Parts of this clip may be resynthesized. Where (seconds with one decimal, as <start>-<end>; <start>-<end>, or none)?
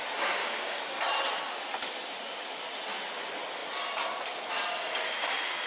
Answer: 0.4-1.0